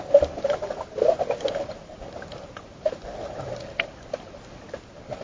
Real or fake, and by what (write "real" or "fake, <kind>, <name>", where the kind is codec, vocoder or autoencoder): real